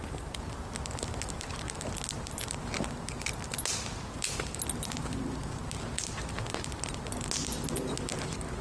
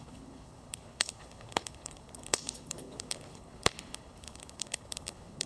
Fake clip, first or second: second